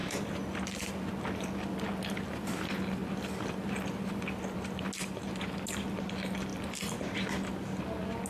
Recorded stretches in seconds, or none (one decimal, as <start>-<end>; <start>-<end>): 0.9-6.5; 7.8-8.3